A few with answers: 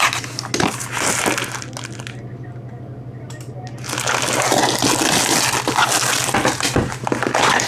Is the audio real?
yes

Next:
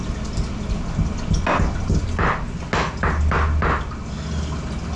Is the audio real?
yes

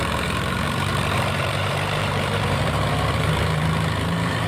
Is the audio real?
no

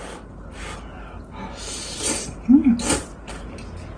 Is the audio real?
yes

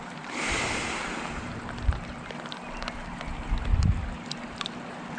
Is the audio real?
yes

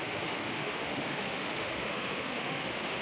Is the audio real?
no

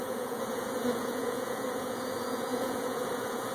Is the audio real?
no